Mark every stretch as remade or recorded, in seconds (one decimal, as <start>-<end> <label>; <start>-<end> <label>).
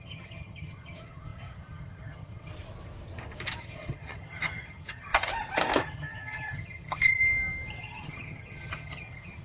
0.0-2.5 remade; 2.5-3.6 recorded; 3.6-5.3 remade; 5.3-5.8 recorded; 5.8-7.2 remade; 7.2-7.8 recorded; 7.8-9.4 remade